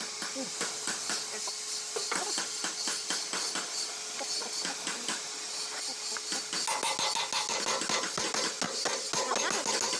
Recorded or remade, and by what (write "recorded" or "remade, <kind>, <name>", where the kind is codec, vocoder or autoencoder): recorded